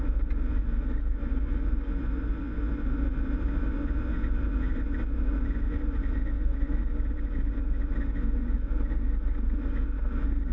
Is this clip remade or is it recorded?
recorded